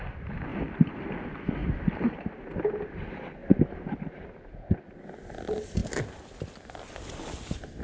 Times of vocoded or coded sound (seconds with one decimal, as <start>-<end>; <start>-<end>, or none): 0.5-1.2; 1.6-2.7; 3.4-4.7; 5.8-6.3